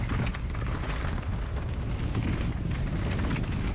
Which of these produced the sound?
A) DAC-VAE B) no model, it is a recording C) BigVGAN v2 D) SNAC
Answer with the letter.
B